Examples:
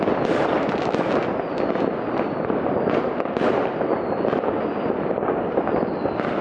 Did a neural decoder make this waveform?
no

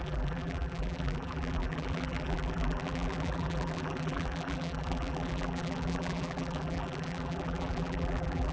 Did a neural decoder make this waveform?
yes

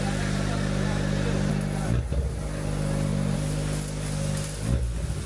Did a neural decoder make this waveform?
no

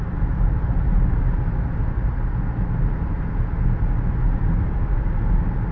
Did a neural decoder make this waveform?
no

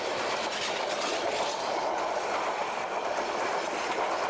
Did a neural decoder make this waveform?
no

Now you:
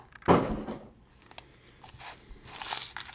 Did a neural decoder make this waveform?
no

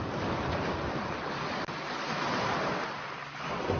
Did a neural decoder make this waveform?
no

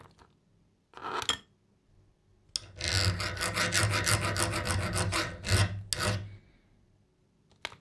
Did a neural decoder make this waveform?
no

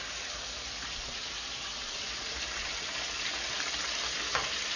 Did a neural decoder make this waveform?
no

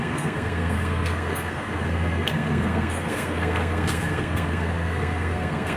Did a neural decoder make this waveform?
yes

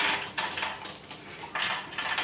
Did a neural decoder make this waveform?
no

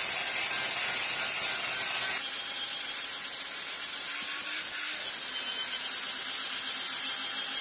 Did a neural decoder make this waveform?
no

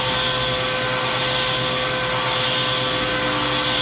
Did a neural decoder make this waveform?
no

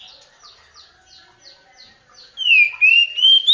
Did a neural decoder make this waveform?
no